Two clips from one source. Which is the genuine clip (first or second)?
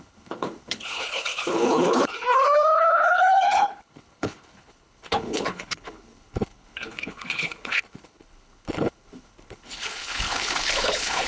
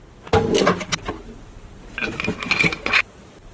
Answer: second